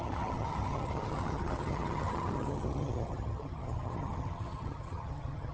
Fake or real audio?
fake